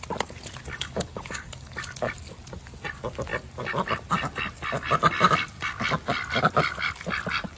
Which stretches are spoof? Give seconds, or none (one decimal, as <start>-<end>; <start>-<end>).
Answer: 0.7-1.7

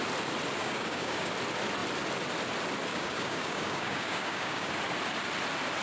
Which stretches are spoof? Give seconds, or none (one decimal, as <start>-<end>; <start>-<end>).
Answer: 0.6-1.3; 2.9-4.7

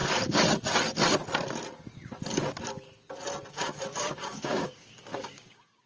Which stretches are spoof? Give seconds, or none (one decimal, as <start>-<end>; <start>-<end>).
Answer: 3.5-5.9

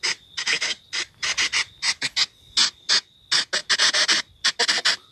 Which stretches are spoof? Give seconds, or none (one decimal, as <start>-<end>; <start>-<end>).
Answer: none

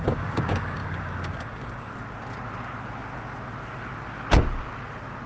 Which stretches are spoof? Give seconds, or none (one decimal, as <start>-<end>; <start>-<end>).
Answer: 0.0-1.9

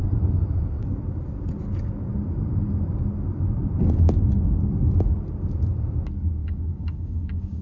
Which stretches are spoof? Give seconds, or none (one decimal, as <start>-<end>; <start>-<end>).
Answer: 6.4-7.6